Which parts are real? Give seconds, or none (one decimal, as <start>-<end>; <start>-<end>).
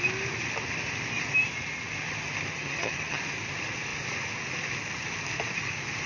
0.0-2.5; 3.2-6.1